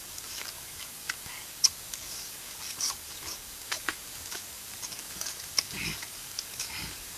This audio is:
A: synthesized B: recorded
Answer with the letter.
A